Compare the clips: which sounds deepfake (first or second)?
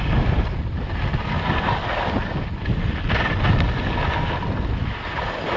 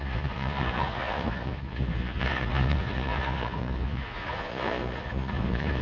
second